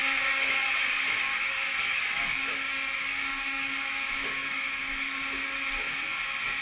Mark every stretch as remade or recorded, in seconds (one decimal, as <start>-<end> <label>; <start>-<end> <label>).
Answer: 0.0-0.7 remade; 0.7-1.2 recorded; 1.2-4.8 remade; 4.8-6.6 recorded